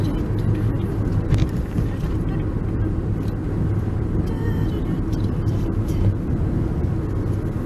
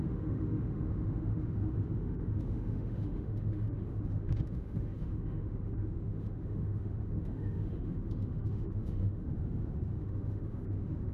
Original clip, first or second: first